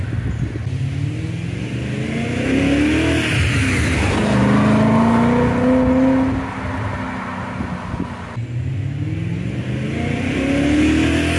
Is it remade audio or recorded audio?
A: recorded